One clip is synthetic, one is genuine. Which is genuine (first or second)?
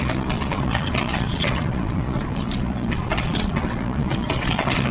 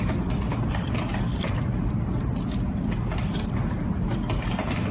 second